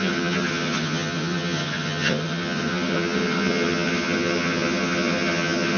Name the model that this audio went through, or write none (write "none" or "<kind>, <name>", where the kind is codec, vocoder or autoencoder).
vocoder, HiFi-GAN